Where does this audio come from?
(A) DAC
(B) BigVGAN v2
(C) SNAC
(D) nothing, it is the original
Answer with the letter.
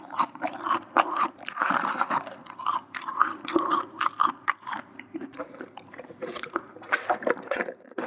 B